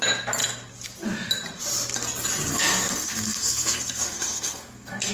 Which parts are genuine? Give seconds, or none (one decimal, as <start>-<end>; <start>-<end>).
0.0-2.5